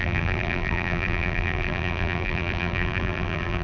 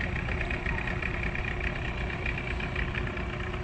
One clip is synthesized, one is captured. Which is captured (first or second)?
second